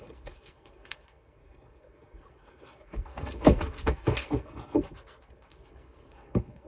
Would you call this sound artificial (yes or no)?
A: yes